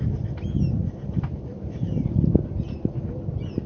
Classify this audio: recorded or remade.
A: recorded